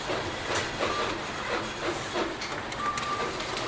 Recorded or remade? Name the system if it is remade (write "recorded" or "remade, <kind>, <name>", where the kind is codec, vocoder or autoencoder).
recorded